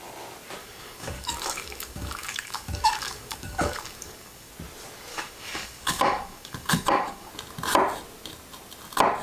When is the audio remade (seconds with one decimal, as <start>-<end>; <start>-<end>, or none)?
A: 0.6-4.5; 5.1-7.3